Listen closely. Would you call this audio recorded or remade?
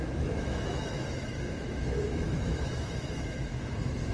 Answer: remade